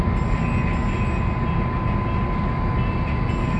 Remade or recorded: recorded